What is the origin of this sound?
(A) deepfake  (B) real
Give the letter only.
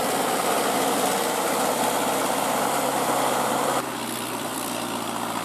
A